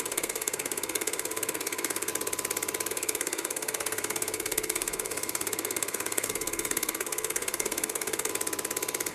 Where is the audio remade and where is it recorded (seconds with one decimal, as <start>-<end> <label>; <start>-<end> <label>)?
0.0-2.1 remade; 2.1-2.9 recorded; 2.9-8.3 remade; 8.3-9.1 recorded